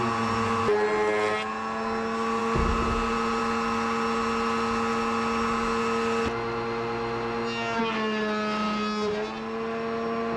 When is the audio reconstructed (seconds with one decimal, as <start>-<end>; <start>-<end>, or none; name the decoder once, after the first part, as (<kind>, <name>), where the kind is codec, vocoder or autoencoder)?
none